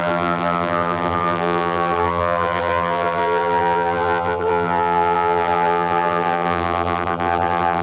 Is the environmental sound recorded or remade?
remade